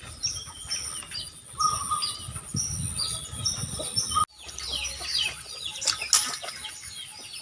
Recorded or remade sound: recorded